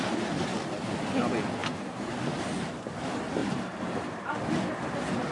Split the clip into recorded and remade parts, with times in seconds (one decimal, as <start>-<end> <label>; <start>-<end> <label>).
0.0-1.6 recorded; 1.6-2.1 remade; 2.1-3.4 recorded; 3.4-4.3 remade; 4.3-5.3 recorded